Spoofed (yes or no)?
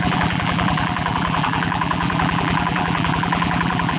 yes